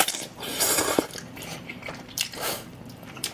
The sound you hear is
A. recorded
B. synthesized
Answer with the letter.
B